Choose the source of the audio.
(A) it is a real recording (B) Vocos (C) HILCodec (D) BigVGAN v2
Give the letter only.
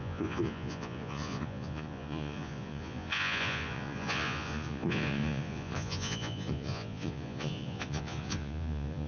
B